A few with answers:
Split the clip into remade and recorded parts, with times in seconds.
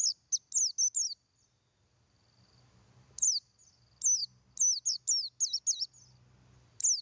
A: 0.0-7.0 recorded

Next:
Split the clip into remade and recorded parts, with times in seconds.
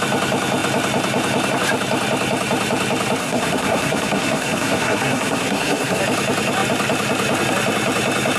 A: 0.0-3.2 recorded; 3.2-6.0 remade; 6.0-8.4 recorded